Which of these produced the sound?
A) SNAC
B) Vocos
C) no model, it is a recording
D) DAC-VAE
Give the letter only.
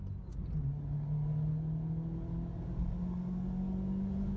C